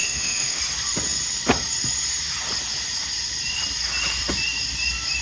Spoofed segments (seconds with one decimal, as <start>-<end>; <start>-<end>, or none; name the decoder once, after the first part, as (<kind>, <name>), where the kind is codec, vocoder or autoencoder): 0.0-0.6 (autoencoder, DAC-VAE)